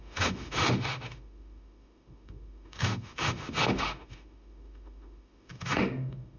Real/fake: fake